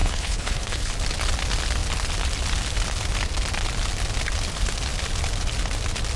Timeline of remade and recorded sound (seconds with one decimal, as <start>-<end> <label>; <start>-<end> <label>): 0.0-0.9 remade; 0.9-6.2 recorded